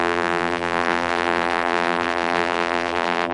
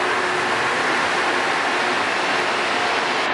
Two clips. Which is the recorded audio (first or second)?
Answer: second